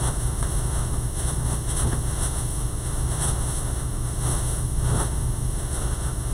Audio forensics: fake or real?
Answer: fake